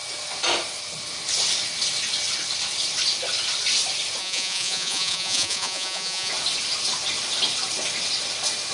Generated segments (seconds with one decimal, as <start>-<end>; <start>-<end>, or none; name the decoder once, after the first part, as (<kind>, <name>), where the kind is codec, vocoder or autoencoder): 4.2-6.3 (vocoder, Vocos)